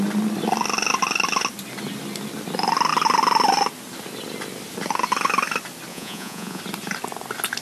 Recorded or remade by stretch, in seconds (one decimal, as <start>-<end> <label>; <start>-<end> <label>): 0.0-5.9 recorded; 5.9-6.6 remade; 6.6-7.6 recorded